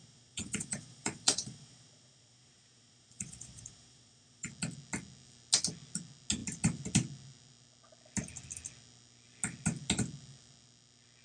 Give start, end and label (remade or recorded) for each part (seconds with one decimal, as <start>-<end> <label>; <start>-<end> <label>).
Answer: 0.0-4.5 remade; 4.5-11.2 recorded